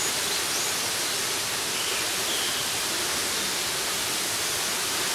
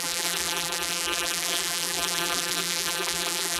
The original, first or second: first